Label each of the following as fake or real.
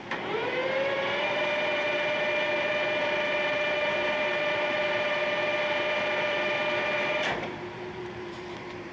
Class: fake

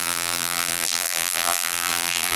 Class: fake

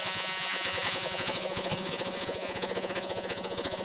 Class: fake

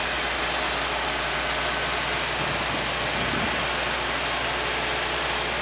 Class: real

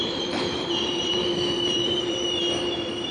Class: fake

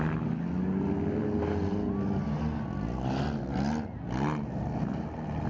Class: real